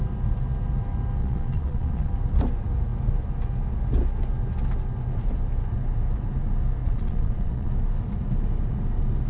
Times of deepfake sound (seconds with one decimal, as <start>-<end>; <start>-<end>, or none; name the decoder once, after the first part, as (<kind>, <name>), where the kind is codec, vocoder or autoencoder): 1.2-2.1 (vocoder, Vocos); 6.8-7.7